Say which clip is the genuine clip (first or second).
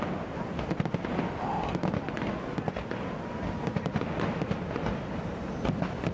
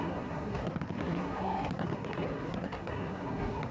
first